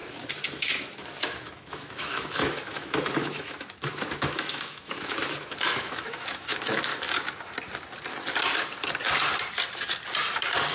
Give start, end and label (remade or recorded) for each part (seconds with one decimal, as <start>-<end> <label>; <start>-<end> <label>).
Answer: 0.0-6.9 remade; 6.9-10.7 recorded